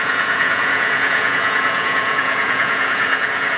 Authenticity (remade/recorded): remade